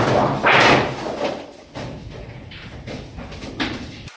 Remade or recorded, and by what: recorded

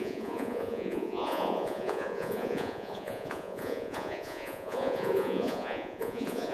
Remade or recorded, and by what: remade, vocoder, Vocos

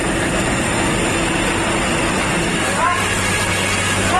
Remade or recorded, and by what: recorded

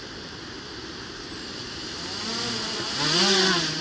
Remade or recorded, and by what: recorded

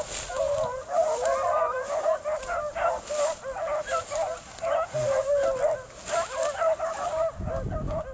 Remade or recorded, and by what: recorded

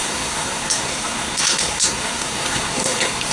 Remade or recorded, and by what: remade, codec, SNAC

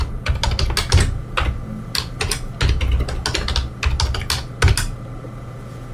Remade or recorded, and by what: recorded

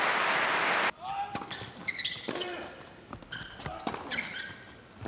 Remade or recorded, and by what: recorded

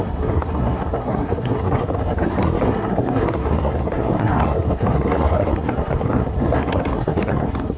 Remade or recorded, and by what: remade, codec, SNAC